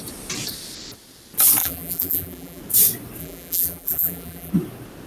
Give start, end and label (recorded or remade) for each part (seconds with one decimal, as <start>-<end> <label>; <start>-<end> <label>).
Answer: 0.0-1.6 recorded; 1.6-2.6 remade; 2.6-3.2 recorded; 3.2-4.5 remade; 4.5-5.1 recorded